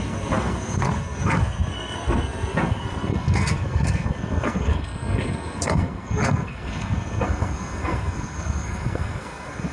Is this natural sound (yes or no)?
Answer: no